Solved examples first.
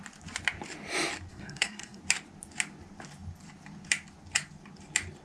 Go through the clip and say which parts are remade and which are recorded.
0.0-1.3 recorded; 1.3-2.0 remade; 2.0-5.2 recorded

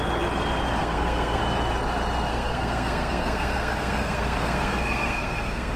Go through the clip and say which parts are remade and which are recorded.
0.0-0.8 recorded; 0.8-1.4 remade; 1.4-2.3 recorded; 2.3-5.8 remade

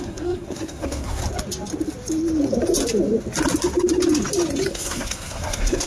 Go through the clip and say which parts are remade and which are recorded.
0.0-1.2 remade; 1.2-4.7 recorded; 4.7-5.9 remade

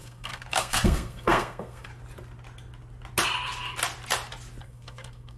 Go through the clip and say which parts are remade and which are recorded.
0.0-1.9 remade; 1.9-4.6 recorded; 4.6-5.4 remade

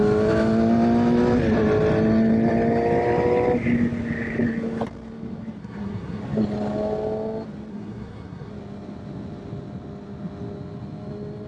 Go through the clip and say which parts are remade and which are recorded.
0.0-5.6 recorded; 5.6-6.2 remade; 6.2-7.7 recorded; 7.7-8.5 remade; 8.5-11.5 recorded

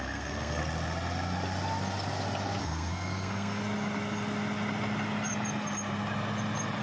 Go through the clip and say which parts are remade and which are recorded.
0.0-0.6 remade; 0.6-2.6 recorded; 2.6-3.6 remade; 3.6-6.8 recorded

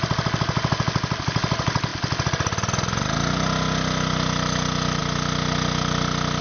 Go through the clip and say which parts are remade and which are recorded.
0.0-6.4 recorded

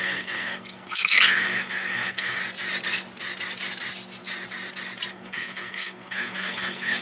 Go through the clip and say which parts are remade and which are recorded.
0.0-2.4 remade; 2.4-5.1 recorded; 5.1-7.0 remade